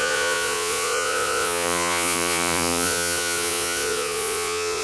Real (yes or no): no